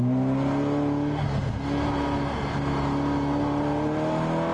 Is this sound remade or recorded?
recorded